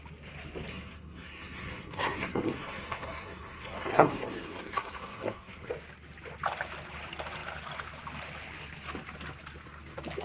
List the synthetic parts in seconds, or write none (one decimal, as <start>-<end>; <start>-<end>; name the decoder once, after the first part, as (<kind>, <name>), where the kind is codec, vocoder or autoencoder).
0.7-5.7 (codec, SNAC)